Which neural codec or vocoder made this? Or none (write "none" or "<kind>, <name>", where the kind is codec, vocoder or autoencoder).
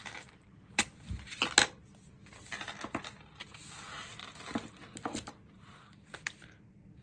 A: none